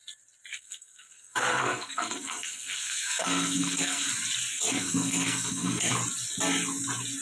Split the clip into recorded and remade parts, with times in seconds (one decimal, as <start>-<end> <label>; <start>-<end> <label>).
0.0-0.5 recorded; 0.5-4.1 remade; 4.1-4.5 recorded; 4.5-5.9 remade; 5.9-7.2 recorded